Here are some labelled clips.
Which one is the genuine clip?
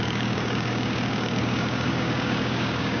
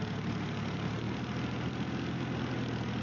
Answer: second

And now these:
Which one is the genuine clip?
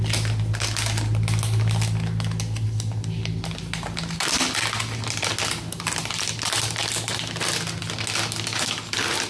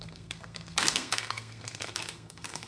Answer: first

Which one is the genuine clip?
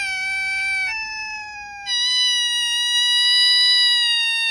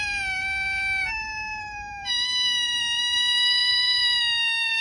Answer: first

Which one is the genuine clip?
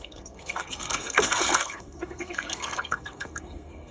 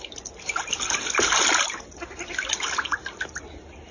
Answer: second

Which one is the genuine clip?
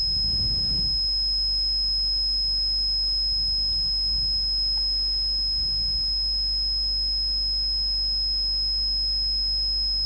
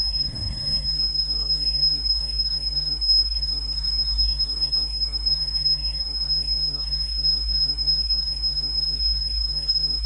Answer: first